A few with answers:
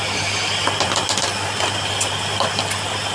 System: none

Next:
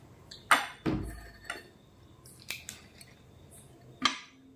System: none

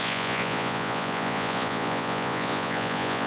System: vocoder, Vocos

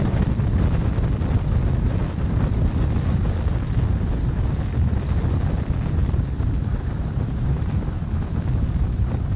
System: none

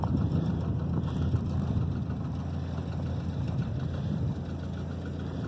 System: none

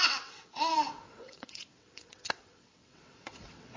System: vocoder, WaveNeXt